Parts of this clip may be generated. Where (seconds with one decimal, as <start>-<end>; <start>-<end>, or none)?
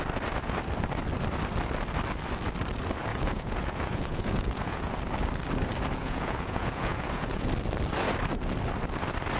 3.1-5.0; 6.0-7.5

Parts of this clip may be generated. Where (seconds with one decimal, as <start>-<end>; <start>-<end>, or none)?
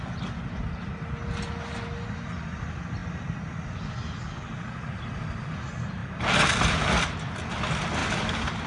none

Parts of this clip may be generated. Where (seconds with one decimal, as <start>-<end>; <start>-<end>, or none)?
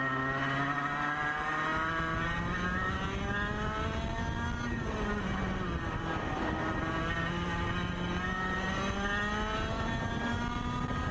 none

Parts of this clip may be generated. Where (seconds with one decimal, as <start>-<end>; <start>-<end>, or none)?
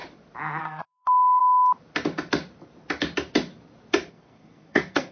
0.6-1.4; 4.1-5.1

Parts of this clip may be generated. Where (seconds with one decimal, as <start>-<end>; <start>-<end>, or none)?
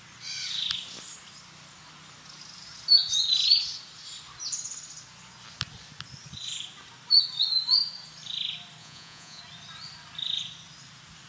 8.8-9.4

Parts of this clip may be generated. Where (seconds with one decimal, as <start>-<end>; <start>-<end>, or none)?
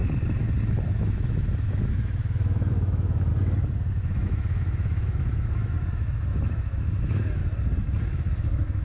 0.7-3.3; 4.0-7.4; 8.0-8.8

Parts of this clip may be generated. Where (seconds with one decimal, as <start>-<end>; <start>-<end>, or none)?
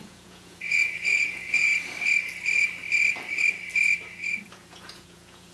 0.0-1.7; 4.5-5.5